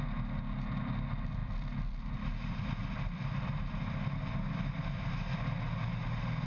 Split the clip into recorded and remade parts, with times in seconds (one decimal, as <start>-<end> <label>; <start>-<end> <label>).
0.0-1.4 recorded; 1.4-5.1 remade; 5.1-6.5 recorded